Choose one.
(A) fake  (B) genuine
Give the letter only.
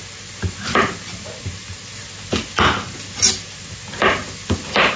B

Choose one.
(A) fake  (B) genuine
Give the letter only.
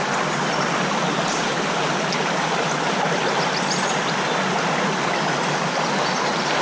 B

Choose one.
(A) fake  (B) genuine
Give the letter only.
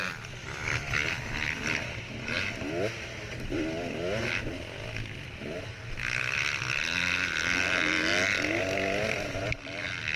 B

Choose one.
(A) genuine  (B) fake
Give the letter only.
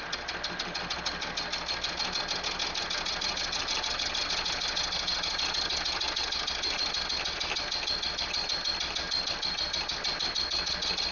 A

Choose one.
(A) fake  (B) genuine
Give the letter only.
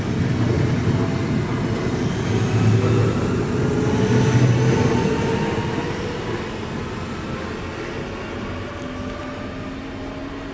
B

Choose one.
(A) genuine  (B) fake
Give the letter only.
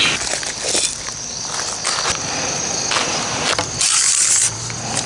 A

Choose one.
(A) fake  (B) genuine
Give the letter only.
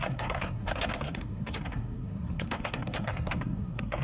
A